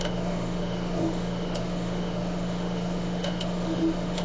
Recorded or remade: remade